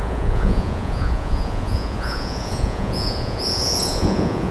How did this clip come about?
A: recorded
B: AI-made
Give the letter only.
B